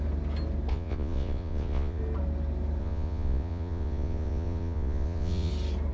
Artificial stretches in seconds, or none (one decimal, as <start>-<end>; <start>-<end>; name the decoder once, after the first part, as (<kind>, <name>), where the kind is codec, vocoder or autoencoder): 0.7-2.0 (vocoder, Vocos); 2.8-5.5

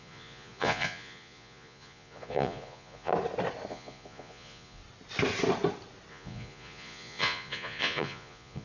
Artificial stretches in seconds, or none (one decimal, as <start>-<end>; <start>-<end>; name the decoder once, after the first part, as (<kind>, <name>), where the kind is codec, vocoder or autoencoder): 0.0-3.1 (vocoder, Vocos); 3.7-4.8; 6.1-8.6

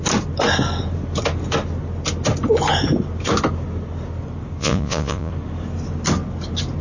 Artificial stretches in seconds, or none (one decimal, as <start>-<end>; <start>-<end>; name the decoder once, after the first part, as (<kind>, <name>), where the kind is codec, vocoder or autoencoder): 4.6-5.3 (vocoder, Vocos)

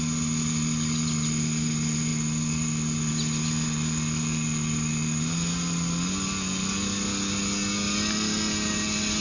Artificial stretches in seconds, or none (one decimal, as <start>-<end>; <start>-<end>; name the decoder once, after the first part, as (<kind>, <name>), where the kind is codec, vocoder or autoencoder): none

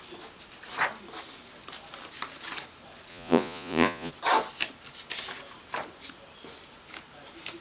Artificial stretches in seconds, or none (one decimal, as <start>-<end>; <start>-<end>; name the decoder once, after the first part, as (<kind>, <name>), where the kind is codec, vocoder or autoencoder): 3.1-4.1 (vocoder, Vocos)